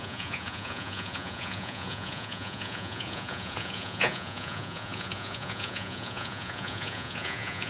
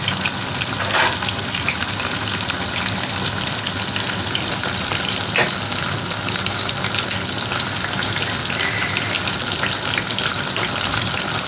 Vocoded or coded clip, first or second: first